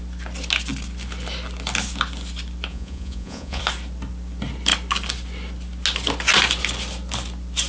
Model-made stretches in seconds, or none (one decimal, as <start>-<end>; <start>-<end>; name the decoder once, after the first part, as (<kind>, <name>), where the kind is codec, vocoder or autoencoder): 2.7-3.6 (vocoder, Vocos)